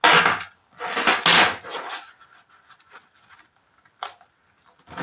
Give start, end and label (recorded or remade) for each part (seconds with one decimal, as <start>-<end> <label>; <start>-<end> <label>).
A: 0.0-1.3 recorded; 1.3-2.2 remade; 2.2-5.0 recorded